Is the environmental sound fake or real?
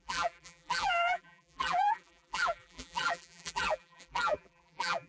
fake